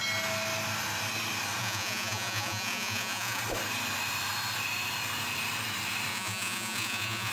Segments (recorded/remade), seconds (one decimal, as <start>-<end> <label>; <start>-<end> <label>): 0.0-1.6 recorded; 1.6-3.4 remade; 3.4-6.1 recorded; 6.1-7.3 remade